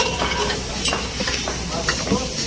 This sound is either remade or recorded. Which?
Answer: recorded